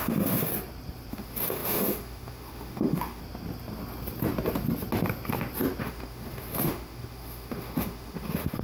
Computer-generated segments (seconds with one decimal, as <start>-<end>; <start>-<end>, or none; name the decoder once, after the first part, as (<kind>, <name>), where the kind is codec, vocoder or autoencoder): 0.0-0.5 (autoencoder, DAC-VAE); 1.1-3.2; 5.8-8.6